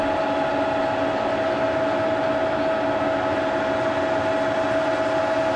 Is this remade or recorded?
recorded